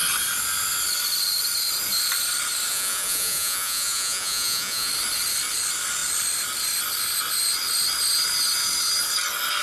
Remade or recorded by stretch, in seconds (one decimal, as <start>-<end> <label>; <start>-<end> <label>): 0.0-2.7 recorded; 2.7-4.9 remade; 4.9-9.6 recorded